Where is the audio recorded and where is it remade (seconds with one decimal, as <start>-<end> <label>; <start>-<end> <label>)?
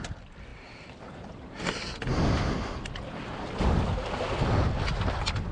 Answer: 0.0-0.5 recorded; 0.5-1.0 remade; 1.0-5.5 recorded